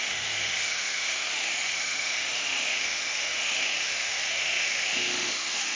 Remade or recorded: remade